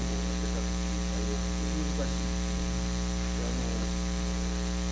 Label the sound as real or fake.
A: real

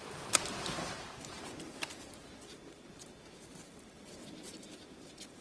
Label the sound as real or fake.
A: real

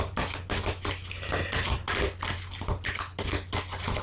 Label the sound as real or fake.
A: real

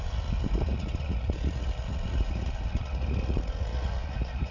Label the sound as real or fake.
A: fake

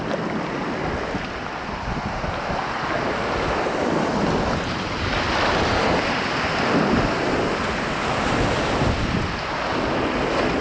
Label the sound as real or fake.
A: real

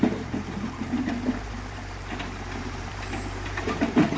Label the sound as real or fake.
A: fake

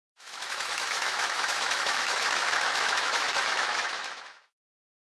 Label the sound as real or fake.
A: fake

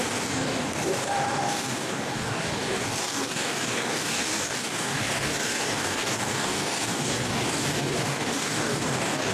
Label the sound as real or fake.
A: fake